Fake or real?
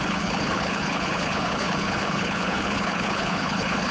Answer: fake